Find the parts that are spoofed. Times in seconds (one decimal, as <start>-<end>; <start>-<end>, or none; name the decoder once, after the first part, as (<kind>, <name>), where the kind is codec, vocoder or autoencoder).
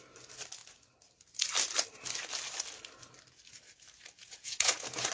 4.2-5.1 (vocoder, Vocos)